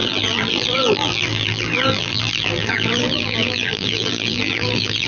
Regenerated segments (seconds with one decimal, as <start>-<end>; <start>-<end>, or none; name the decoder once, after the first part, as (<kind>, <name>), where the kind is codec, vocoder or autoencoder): 0.0-5.1 (vocoder, BigVGAN v2)